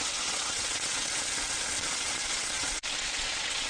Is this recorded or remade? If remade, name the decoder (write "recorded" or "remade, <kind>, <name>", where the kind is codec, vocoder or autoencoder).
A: remade, vocoder, WaveNeXt